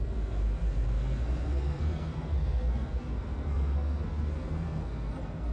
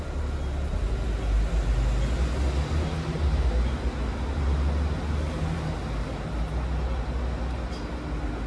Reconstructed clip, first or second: first